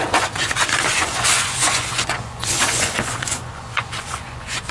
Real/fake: fake